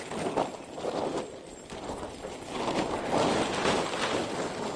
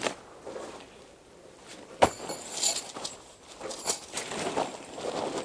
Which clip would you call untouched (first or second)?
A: first